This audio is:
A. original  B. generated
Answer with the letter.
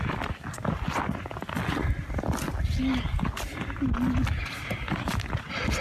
A